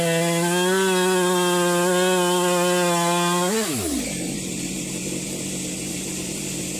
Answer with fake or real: real